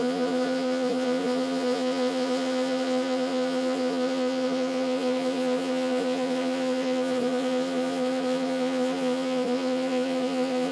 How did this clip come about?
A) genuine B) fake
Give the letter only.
B